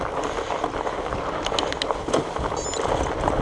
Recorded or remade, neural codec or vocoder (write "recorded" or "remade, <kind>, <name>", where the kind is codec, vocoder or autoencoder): recorded